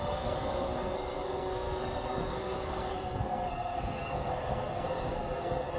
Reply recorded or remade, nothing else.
remade